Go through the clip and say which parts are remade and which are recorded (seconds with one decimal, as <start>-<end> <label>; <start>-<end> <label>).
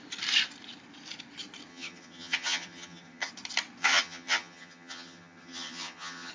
0.0-1.7 recorded; 1.7-3.3 remade; 3.3-3.8 recorded; 3.8-6.3 remade